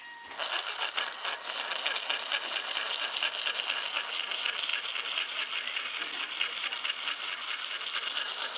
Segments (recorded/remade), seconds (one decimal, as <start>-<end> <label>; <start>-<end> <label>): 0.0-8.6 recorded